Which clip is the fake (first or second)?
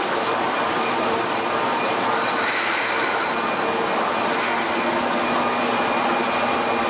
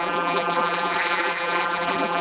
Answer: second